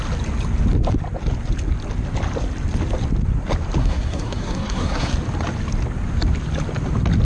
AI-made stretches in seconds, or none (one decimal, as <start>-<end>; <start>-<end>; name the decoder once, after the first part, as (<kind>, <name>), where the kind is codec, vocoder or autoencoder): 3.8-5.1 (codec, SNAC)